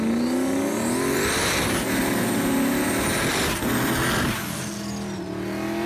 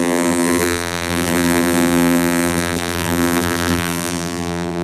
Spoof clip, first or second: second